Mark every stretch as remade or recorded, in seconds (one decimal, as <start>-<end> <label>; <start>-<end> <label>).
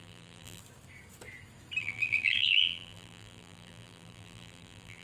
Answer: 0.0-0.6 remade; 0.6-1.8 recorded; 1.8-5.0 remade